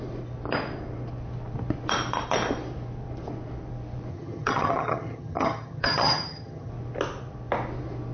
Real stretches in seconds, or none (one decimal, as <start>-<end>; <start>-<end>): 0.0-4.1; 6.7-8.1